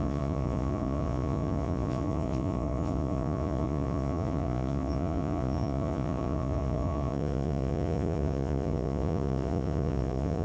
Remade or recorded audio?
remade